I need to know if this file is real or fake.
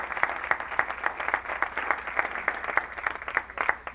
real